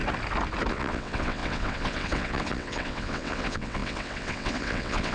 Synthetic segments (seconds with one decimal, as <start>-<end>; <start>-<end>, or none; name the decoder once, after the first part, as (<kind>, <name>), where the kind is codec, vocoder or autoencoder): 0.7-5.1 (vocoder, WaveNeXt)